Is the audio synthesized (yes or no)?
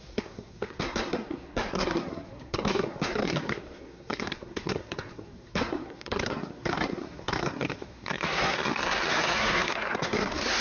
yes